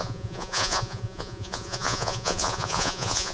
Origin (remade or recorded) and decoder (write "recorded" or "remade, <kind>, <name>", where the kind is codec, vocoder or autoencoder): remade, vocoder, Vocos